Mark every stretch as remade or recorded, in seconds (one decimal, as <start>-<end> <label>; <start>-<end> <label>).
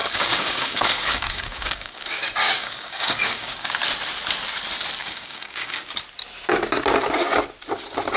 0.0-3.8 remade; 3.8-5.0 recorded; 5.0-5.9 remade; 5.9-8.2 recorded